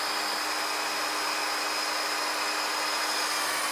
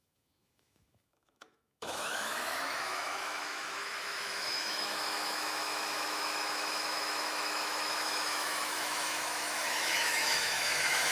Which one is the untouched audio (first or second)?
first